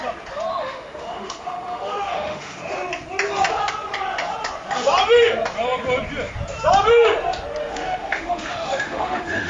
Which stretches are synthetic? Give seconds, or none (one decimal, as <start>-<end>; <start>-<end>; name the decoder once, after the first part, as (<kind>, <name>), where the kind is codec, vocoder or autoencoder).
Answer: 0.5-2.7 (autoencoder, DAC-VAE); 7.6-9.5